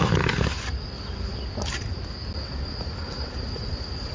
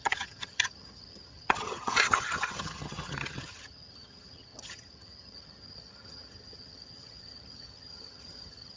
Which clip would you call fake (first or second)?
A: second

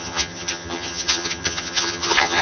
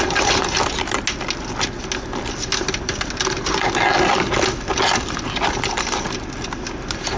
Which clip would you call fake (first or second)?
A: first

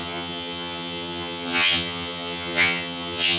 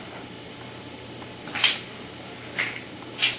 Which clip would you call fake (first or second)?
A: first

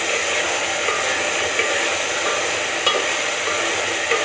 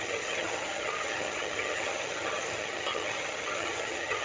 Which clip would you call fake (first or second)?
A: second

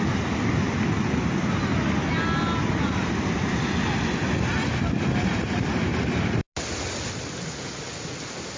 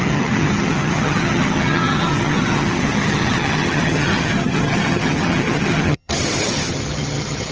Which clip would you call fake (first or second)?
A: second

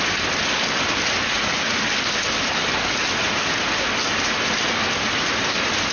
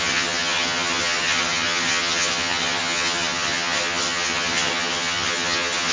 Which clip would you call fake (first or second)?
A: second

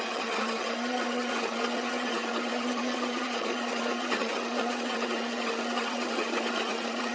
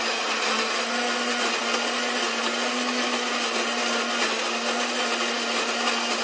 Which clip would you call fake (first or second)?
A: first